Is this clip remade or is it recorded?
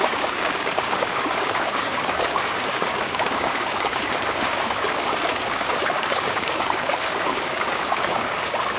remade